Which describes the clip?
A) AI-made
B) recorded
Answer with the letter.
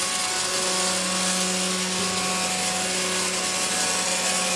B